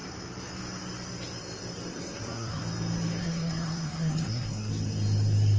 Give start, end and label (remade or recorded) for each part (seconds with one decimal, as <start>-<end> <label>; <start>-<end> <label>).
0.0-1.9 recorded; 1.9-2.6 remade; 2.6-3.2 recorded; 3.2-4.7 remade; 4.7-5.6 recorded